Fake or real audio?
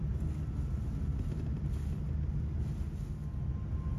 real